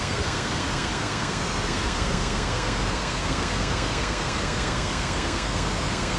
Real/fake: fake